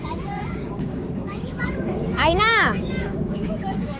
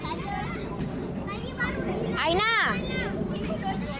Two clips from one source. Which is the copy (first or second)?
first